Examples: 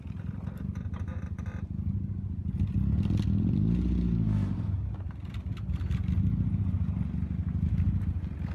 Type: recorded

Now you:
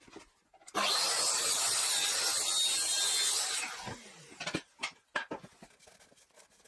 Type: recorded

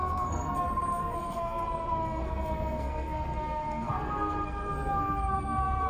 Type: remade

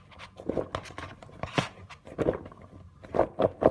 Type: recorded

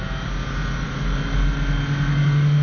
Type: recorded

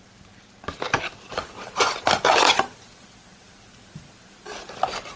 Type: recorded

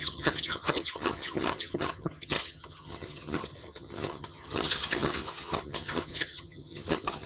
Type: remade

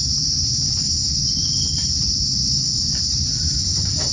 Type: remade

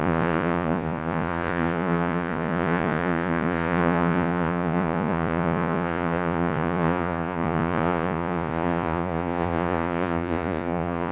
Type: remade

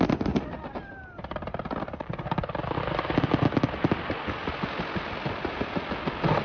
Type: recorded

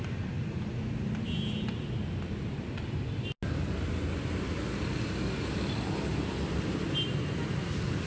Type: recorded